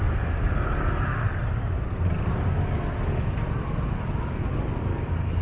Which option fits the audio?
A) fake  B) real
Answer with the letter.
B